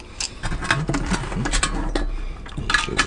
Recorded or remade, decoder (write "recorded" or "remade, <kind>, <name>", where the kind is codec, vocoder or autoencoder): recorded